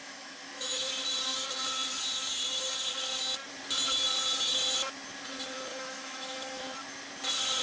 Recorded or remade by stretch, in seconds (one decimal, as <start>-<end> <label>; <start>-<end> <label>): 0.0-0.9 remade; 0.9-5.7 recorded; 5.7-6.6 remade; 6.6-7.6 recorded